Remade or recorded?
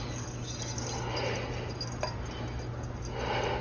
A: recorded